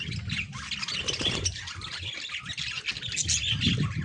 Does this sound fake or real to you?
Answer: real